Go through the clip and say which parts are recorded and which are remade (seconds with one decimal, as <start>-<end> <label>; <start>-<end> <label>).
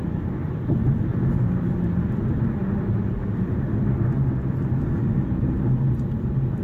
0.0-2.6 recorded; 2.6-3.4 remade; 3.4-6.6 recorded